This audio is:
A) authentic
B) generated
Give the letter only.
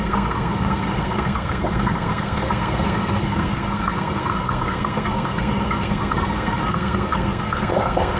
B